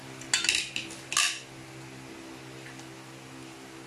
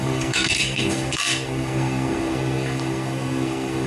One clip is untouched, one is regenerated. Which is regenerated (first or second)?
second